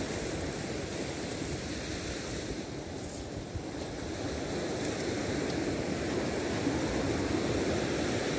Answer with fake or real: real